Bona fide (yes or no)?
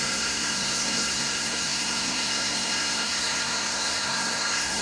no